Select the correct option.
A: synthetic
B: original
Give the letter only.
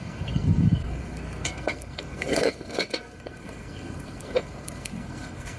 A